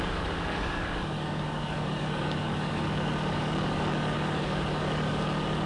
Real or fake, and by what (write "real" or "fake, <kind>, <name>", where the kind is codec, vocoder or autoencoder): fake, codec, DAC